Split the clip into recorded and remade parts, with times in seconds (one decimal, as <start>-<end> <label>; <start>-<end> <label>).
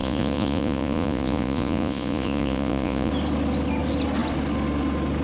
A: 0.0-3.1 remade; 3.1-5.2 recorded